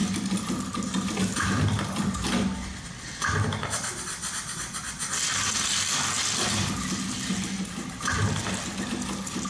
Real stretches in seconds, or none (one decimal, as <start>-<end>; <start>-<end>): 0.0-9.5